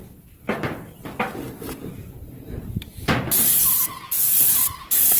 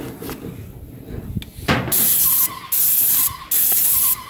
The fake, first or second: first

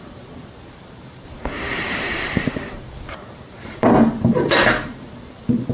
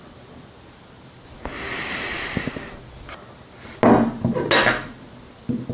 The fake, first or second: first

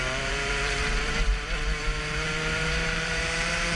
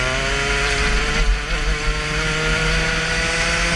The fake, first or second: first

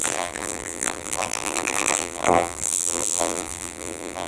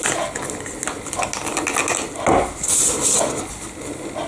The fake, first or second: first